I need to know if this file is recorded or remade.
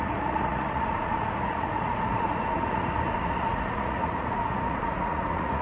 remade